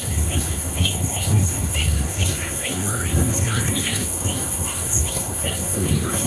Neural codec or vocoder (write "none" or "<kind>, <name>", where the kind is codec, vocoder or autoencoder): codec, SNAC